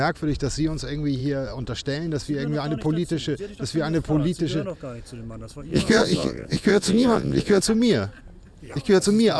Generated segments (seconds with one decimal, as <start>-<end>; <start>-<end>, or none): 5.7-7.6